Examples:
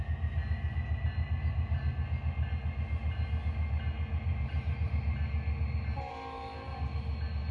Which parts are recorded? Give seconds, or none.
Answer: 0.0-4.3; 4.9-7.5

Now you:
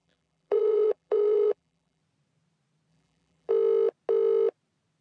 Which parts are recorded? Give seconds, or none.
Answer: 2.0-2.9; 3.5-5.0

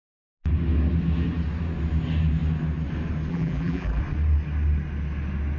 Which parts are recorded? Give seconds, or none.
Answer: 0.0-3.3; 4.0-5.6